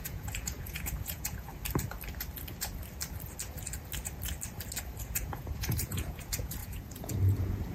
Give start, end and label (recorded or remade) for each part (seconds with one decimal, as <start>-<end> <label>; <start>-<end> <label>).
0.0-1.5 remade; 1.5-5.0 recorded; 5.0-7.7 remade